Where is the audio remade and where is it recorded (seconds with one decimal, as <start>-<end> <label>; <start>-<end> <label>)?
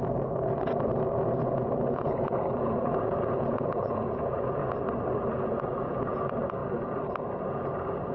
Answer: 0.0-1.4 recorded; 1.4-4.6 remade; 4.6-5.3 recorded; 5.3-6.6 remade; 6.6-8.1 recorded